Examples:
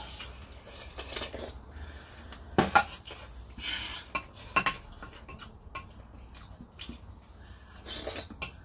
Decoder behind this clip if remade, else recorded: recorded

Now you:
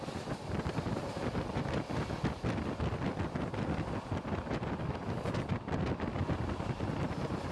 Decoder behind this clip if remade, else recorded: recorded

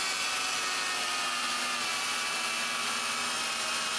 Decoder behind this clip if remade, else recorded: recorded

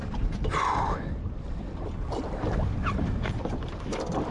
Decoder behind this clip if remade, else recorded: remade, vocoder, BigVGAN v2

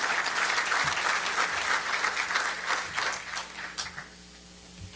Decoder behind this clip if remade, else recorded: recorded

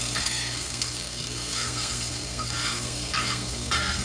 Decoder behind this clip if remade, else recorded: remade, codec, SNAC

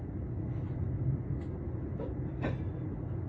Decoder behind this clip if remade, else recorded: recorded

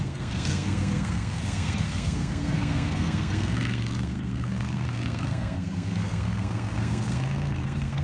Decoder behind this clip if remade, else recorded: remade, codec, SNAC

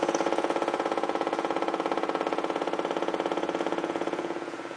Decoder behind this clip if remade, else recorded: remade, vocoder, Vocos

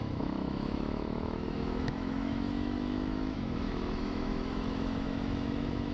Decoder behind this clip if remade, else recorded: remade, autoencoder, DAC-VAE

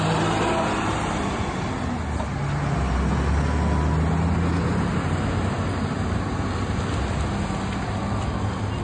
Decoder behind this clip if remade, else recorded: recorded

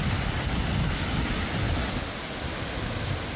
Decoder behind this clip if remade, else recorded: recorded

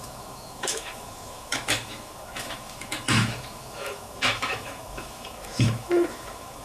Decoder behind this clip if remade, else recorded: remade, autoencoder, DAC-VAE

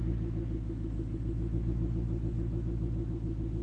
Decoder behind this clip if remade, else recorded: remade, autoencoder, DAC-VAE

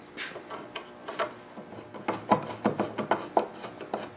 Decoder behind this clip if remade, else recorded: recorded